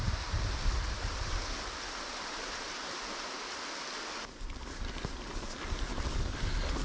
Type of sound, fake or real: real